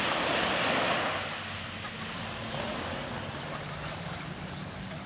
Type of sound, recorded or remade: recorded